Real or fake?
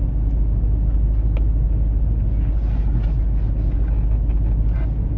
real